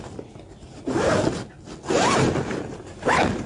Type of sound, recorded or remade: recorded